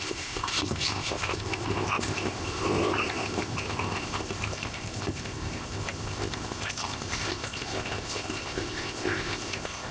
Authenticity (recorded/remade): remade